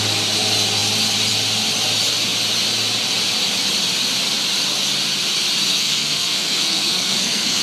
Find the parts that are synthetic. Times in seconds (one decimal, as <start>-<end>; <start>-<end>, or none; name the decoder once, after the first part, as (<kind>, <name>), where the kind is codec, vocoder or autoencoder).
5.7-7.6 (codec, SNAC)